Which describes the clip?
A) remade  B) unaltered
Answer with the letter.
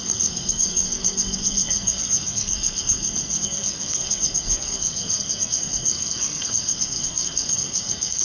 A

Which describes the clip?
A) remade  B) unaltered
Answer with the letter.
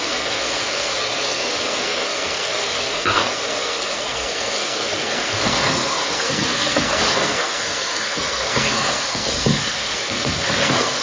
A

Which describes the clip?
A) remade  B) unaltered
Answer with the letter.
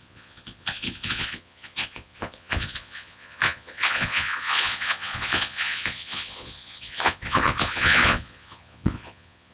A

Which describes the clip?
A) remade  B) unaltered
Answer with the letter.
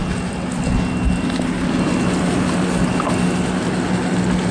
B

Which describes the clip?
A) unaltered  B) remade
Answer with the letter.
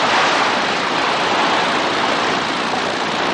A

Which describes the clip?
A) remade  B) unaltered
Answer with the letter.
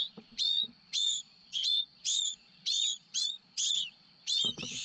A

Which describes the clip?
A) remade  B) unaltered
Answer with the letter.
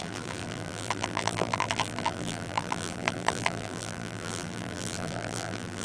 A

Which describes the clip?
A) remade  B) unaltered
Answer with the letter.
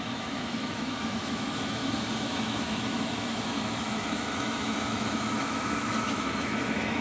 A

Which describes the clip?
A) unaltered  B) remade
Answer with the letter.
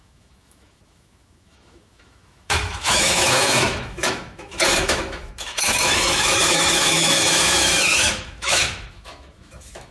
B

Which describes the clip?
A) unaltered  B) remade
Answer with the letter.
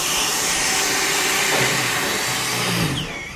B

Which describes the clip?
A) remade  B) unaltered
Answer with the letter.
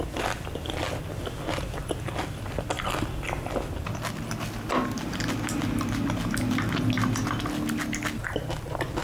B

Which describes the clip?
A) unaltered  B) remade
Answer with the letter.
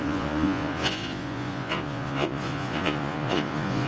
B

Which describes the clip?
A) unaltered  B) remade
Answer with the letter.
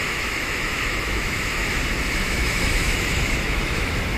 B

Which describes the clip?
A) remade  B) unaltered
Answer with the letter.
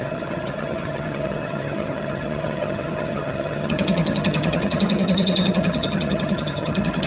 A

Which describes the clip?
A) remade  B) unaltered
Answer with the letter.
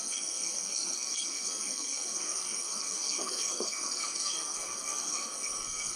A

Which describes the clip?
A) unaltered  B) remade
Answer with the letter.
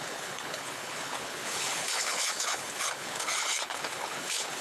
B